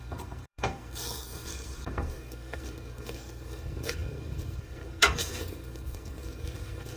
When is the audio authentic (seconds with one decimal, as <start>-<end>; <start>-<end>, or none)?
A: none